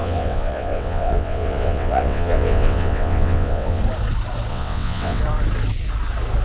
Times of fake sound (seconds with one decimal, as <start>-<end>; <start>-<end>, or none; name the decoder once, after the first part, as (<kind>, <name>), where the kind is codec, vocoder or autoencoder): 0.0-3.8 (vocoder, WaveNeXt); 4.5-5.2